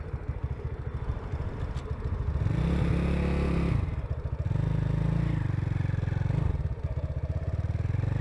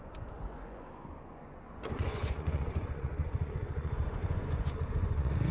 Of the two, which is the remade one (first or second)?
second